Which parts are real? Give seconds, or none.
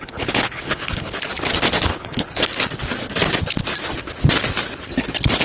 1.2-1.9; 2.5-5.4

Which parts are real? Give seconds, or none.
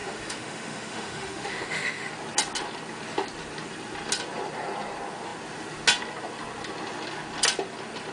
2.1-8.1